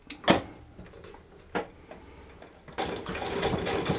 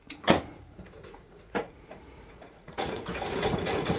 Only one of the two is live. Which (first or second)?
first